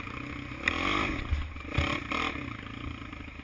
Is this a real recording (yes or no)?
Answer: yes